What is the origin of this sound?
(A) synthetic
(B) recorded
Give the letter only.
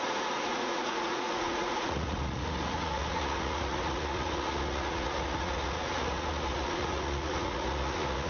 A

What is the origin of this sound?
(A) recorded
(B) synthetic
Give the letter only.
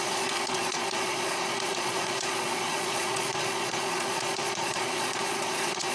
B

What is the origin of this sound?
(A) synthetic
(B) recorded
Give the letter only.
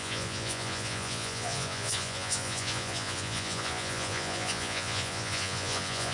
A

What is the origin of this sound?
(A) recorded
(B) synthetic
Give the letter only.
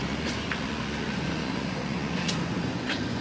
B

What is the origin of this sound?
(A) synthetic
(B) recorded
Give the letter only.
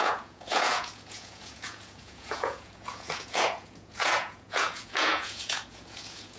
A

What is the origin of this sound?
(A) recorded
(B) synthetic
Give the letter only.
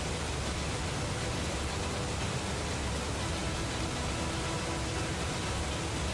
A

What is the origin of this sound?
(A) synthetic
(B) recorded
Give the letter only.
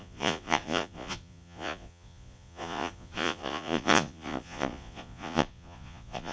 A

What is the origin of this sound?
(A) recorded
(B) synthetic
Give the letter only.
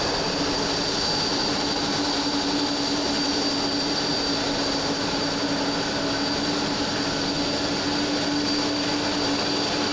A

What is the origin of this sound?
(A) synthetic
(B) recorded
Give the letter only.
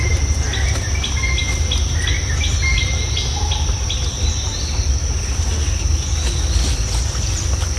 B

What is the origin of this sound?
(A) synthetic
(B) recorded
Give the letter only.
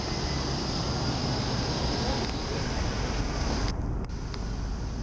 B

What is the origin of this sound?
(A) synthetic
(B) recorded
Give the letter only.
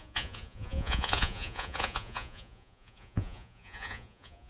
A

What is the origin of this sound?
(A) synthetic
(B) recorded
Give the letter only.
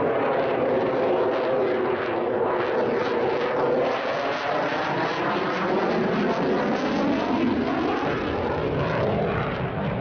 B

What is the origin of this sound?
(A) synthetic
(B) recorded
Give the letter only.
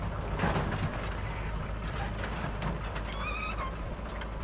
B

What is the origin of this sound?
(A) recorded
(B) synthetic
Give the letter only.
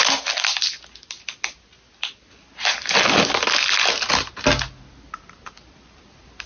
A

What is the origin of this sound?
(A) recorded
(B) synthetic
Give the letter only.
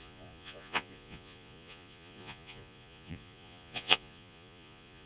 B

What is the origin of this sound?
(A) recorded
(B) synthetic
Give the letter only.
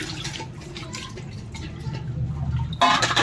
A